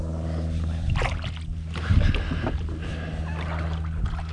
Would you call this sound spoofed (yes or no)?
no